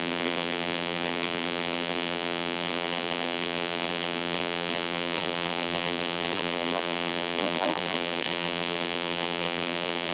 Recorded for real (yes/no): no